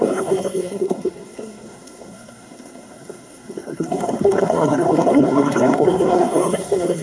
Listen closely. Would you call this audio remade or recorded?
remade